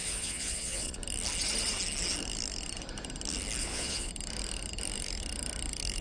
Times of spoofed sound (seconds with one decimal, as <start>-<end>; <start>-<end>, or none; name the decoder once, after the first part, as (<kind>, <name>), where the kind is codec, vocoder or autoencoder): 0.0-1.0 (vocoder, Vocos); 3.6-4.1